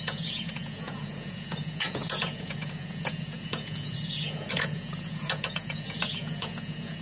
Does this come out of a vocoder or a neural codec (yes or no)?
yes